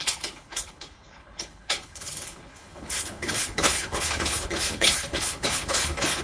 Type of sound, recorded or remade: remade